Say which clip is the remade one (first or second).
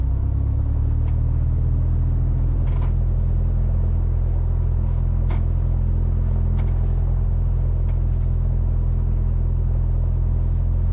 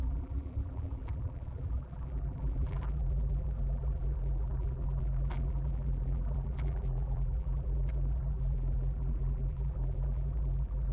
second